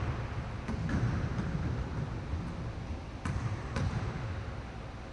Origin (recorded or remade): recorded